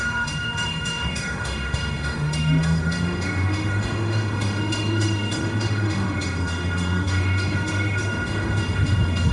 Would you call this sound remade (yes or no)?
yes